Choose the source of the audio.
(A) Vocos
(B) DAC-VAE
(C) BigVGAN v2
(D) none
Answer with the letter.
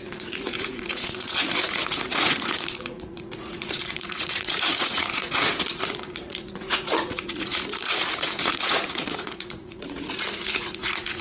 A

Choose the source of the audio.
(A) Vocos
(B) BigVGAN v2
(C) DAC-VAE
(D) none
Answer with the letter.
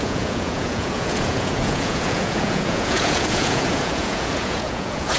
A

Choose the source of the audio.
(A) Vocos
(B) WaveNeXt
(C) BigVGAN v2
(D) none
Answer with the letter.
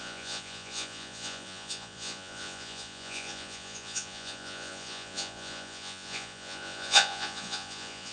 A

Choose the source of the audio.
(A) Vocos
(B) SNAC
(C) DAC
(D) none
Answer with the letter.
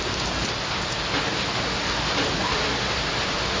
D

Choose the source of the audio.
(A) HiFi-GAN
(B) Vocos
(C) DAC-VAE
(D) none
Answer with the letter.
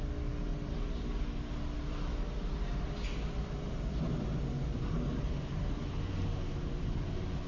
D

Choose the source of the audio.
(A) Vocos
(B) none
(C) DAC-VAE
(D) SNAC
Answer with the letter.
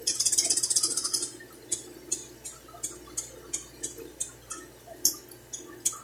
B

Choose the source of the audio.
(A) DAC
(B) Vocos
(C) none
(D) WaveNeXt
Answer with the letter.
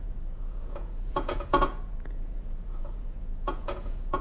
B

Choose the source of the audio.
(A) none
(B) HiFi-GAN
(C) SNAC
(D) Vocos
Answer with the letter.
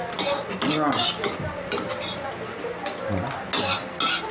A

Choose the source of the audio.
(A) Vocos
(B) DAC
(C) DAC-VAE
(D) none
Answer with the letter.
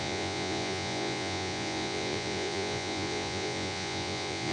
A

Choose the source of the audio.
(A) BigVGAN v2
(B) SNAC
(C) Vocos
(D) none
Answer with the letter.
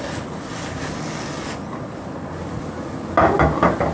D